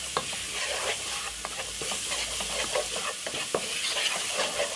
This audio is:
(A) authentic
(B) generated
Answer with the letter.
A